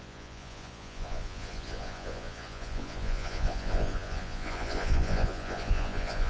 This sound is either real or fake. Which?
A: fake